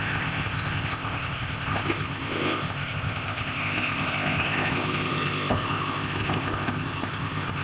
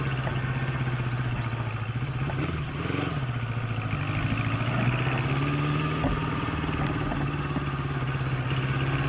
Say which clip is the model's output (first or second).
first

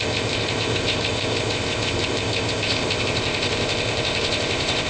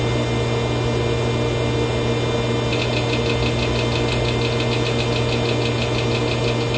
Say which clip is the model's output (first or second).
first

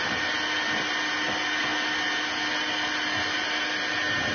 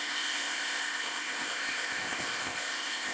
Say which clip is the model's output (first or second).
second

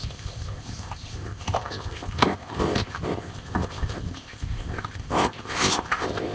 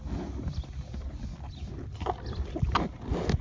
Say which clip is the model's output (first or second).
first